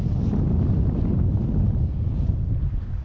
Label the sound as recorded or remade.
recorded